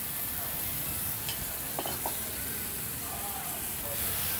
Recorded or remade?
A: remade